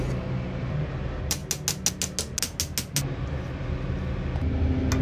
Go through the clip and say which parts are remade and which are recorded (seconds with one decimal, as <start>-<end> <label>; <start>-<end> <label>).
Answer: 0.0-5.0 recorded